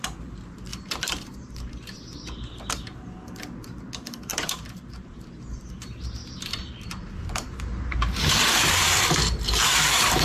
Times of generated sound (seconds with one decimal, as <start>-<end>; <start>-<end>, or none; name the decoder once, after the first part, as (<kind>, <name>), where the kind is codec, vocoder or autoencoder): 0.7-2.6 (vocoder, BigVGAN v2); 4.3-5.7; 6.2-9.0